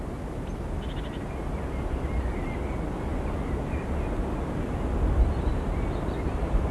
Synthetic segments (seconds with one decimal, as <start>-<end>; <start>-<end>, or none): none